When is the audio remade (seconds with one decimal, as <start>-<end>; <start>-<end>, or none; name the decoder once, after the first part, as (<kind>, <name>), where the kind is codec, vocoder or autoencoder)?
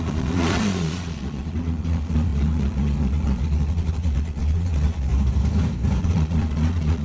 0.0-5.1 (vocoder, Vocos); 6.0-7.0